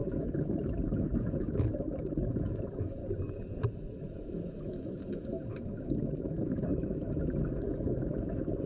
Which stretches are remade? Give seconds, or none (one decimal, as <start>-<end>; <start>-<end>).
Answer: 0.0-3.0; 3.7-8.7